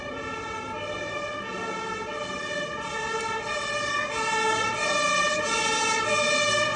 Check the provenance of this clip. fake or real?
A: real